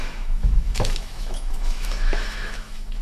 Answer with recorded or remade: remade